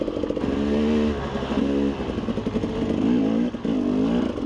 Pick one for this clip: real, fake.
real